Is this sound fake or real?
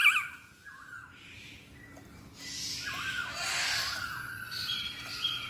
real